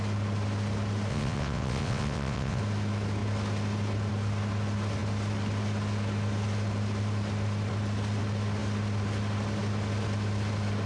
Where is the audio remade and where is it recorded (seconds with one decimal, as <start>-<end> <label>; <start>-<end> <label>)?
0.0-1.1 recorded; 1.1-2.6 remade; 2.6-10.9 recorded